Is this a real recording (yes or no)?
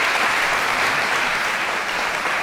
no